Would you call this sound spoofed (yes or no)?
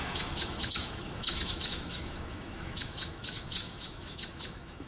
yes